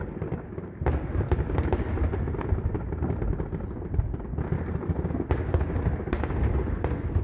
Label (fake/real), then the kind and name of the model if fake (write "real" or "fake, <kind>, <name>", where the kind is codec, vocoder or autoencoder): real